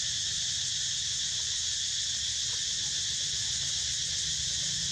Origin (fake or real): real